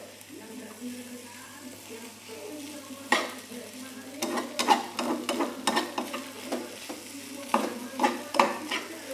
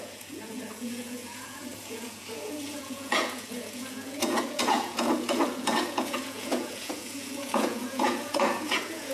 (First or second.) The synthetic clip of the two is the second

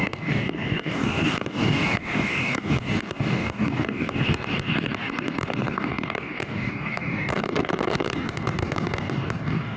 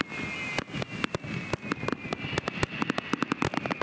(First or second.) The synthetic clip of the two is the first